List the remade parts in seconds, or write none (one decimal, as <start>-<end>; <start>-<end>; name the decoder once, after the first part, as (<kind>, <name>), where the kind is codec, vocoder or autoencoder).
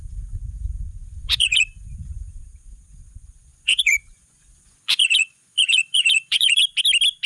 0.0-6.6 (vocoder, Vocos)